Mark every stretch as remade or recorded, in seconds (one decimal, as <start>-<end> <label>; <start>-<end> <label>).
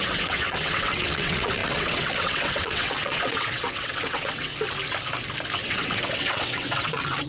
0.0-4.5 remade; 4.5-5.6 recorded; 5.6-7.3 remade